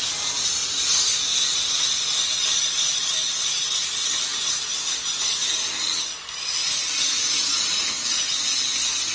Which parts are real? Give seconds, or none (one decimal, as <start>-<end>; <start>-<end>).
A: 0.0-9.1